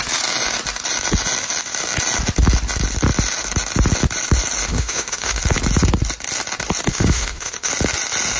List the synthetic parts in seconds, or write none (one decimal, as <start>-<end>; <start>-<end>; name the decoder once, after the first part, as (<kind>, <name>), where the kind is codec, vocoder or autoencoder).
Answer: 4.7-5.4 (autoencoder, DAC-VAE); 6.9-7.7